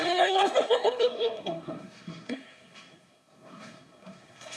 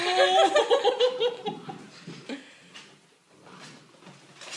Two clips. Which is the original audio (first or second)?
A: second